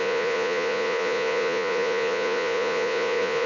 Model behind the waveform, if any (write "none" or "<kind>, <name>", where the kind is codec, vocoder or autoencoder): vocoder, Vocos